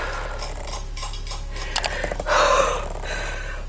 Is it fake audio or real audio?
fake